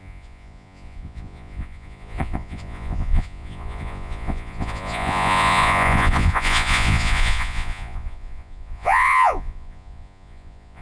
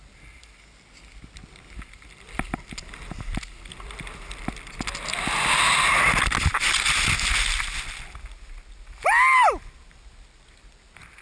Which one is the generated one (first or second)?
first